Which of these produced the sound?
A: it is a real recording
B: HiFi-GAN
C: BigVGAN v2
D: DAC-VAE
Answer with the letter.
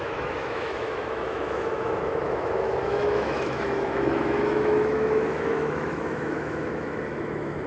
D